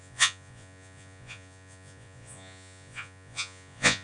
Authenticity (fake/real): fake